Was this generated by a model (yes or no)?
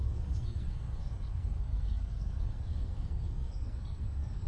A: yes